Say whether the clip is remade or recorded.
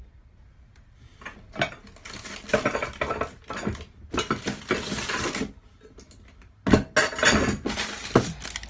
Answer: recorded